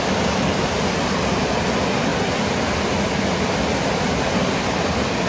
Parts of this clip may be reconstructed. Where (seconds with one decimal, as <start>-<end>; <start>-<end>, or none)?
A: none